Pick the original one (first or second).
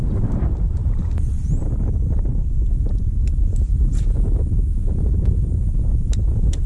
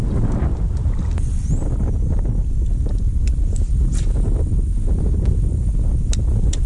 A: second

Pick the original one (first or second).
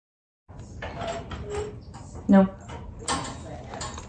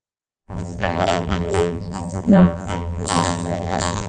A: first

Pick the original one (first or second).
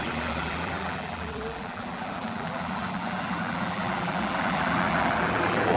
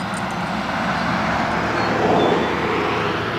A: second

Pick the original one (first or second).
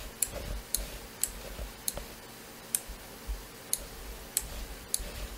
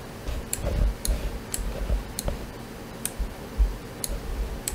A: first